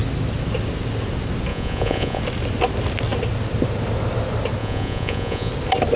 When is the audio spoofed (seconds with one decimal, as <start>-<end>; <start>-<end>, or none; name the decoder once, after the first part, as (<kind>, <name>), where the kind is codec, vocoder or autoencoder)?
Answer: 1.5-2.2 (vocoder, Vocos); 4.6-5.5